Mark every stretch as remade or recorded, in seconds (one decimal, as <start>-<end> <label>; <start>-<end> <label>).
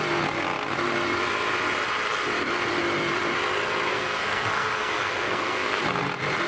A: 0.0-3.9 recorded; 3.9-5.8 remade; 5.8-6.5 recorded